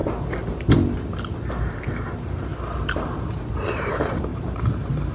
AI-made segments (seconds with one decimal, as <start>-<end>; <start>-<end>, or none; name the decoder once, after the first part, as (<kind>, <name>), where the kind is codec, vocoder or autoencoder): 4.3-5.1 (vocoder, BigVGAN v2)